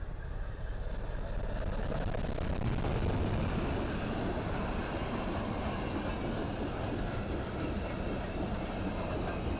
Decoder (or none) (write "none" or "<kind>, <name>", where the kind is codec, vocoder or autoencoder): none